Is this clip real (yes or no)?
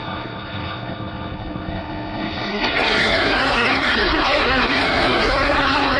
no